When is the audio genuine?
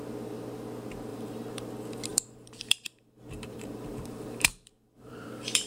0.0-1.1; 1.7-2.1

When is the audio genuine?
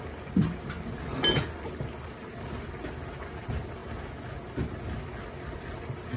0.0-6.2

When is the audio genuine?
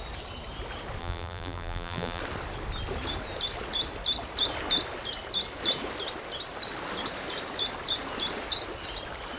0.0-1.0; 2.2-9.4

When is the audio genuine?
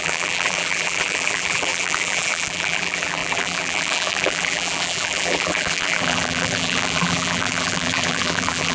none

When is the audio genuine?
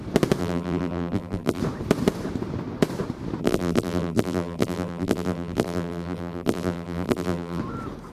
0.0-0.4; 1.6-3.4; 7.6-8.1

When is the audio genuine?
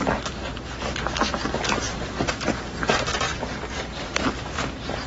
0.0-3.3; 4.2-5.1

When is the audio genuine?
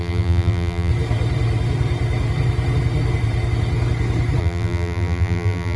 0.9-4.4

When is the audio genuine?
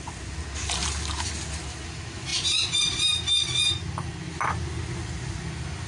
0.0-0.8; 1.3-5.9